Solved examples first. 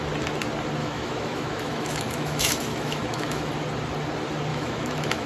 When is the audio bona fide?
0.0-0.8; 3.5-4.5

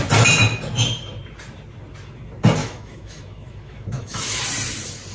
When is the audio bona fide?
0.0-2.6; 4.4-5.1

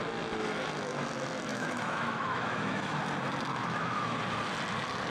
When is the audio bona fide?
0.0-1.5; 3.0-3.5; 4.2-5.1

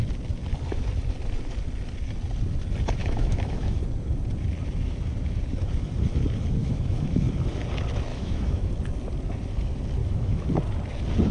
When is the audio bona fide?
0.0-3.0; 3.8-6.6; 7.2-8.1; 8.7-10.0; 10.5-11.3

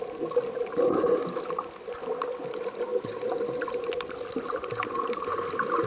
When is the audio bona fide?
0.0-5.9

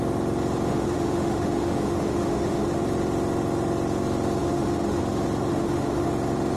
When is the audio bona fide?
0.0-0.7; 2.8-4.4; 5.0-5.5; 6.1-6.6